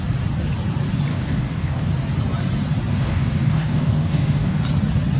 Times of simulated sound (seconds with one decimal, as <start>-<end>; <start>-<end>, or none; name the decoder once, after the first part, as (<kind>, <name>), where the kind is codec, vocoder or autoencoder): 1.1-1.9 (codec, DAC); 2.9-4.6

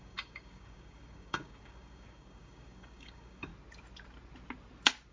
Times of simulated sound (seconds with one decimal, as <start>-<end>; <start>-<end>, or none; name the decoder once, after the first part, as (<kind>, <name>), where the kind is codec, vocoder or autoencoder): 0.0-3.5 (codec, DAC)